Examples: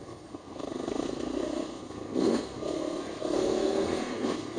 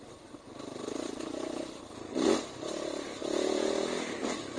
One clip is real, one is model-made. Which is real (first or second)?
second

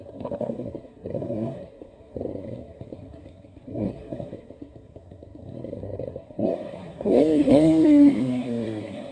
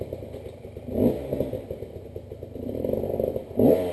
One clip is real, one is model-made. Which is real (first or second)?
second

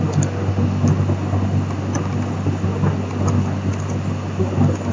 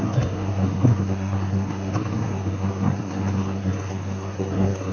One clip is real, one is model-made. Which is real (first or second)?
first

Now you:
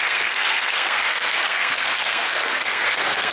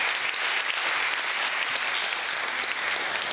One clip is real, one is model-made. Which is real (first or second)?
second